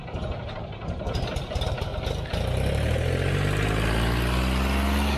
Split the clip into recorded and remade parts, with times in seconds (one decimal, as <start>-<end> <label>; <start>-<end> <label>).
0.0-1.9 remade; 1.9-5.2 recorded